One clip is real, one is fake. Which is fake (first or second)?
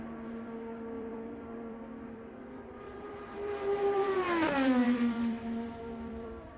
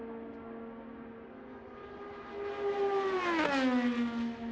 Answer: first